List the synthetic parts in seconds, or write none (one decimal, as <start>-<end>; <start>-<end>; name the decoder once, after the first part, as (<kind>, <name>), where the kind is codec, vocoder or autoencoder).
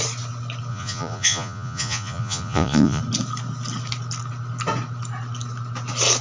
0.7-3.0 (vocoder, Vocos)